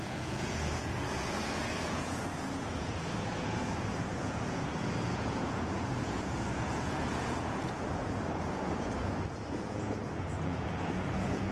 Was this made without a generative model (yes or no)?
no